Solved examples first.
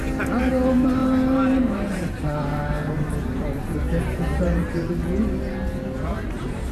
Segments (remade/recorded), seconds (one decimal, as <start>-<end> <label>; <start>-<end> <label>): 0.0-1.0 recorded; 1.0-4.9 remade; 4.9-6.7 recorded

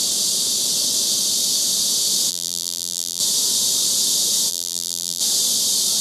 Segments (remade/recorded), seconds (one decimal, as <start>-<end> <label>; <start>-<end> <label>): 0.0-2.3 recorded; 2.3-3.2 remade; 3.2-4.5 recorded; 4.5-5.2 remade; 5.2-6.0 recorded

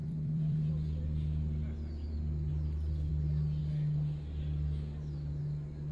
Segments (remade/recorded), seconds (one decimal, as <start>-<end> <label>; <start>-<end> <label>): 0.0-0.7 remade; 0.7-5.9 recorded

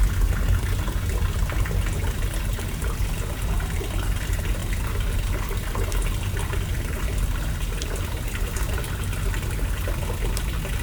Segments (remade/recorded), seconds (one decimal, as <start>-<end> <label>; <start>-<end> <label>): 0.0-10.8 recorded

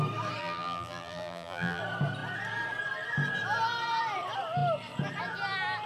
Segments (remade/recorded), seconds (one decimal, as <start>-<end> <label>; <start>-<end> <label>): 0.0-0.4 recorded; 0.4-1.8 remade; 1.8-5.9 recorded